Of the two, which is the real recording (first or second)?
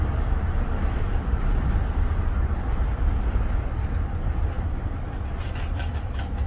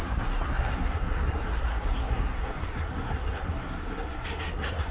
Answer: first